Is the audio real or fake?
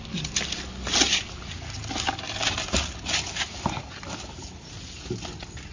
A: real